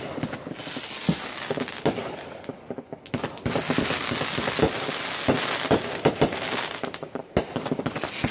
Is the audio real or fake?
real